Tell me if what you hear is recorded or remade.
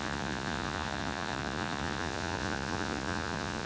remade